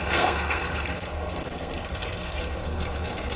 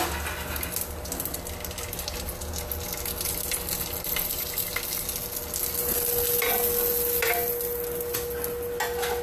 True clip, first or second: second